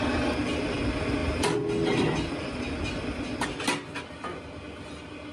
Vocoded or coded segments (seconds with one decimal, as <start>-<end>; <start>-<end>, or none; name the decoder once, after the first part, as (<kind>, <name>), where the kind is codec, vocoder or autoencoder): none